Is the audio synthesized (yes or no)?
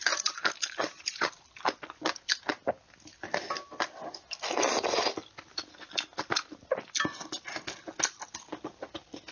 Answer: no